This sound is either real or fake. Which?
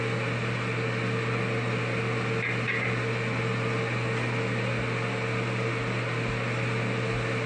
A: real